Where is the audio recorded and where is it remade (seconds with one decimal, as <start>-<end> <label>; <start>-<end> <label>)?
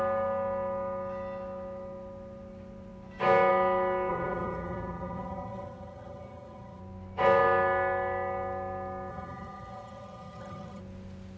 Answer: 0.0-4.1 recorded; 4.1-6.8 remade; 6.8-9.1 recorded; 9.1-10.8 remade; 10.8-11.4 recorded